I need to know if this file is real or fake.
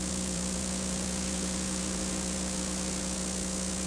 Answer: fake